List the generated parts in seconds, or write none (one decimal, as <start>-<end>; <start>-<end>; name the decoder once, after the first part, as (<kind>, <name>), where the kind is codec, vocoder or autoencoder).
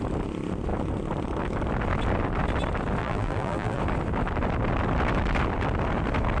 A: 3.0-3.8 (vocoder, BigVGAN v2)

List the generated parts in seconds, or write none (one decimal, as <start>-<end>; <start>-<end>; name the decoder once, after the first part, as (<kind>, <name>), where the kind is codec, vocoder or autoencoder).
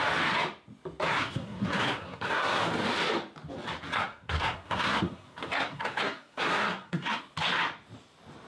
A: 1.1-2.6 (codec, SNAC); 3.9-7.2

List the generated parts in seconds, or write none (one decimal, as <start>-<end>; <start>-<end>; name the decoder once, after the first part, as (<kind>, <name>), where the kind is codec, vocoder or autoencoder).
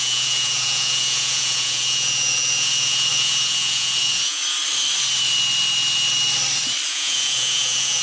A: 0.0-4.4 (vocoder, Vocos); 6.9-8.0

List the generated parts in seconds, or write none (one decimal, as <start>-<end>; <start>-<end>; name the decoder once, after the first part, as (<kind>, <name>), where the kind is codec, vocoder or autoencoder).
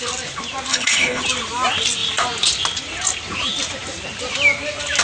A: 0.7-1.2 (codec, HILCodec)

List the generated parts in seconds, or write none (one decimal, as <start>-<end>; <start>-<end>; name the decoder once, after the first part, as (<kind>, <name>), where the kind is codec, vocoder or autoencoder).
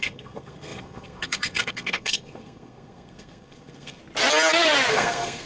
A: 0.0-4.0 (codec, SNAC); 4.9-5.5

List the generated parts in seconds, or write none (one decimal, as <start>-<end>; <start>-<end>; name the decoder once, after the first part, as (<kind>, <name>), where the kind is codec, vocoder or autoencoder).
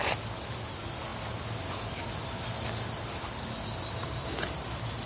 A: none